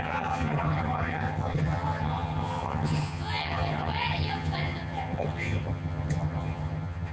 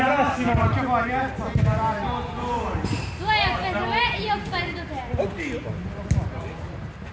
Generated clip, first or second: first